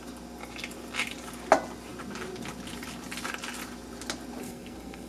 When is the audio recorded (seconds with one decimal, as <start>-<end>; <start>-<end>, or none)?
0.0-4.4